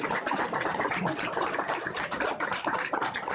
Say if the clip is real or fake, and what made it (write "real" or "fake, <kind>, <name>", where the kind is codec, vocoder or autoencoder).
real